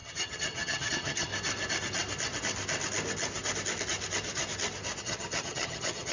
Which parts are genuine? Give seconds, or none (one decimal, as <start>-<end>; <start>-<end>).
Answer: 1.3-5.0